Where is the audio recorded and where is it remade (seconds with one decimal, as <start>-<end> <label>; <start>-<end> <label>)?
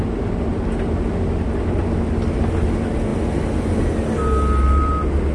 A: 0.0-5.3 recorded